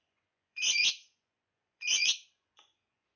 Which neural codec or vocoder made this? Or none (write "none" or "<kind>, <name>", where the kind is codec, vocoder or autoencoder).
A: vocoder, Vocos